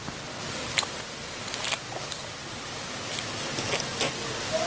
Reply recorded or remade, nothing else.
recorded